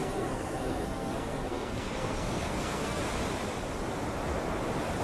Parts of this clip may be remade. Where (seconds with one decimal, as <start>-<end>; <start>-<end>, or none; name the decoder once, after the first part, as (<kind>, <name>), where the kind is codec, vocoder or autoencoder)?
0.0-3.0 (codec, SNAC)